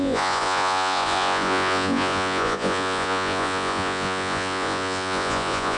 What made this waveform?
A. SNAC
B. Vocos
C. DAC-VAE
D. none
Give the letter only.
B